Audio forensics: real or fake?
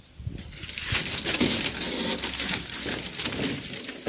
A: real